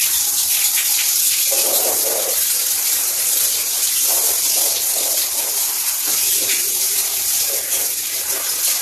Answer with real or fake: real